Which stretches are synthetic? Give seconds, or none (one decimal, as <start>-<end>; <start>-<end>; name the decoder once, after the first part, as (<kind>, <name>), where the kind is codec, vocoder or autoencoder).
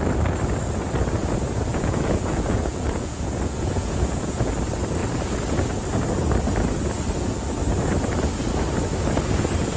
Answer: 1.7-4.5 (vocoder, Vocos)